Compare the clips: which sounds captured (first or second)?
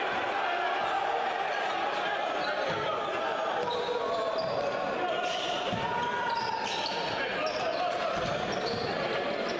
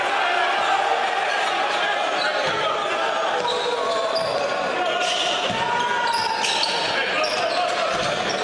second